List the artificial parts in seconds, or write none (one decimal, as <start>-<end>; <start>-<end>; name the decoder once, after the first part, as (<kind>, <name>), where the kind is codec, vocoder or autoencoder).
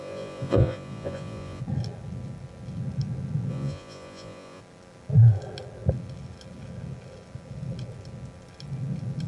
0.0-1.6 (vocoder, Vocos); 3.5-4.6